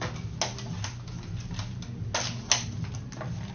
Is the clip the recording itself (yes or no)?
yes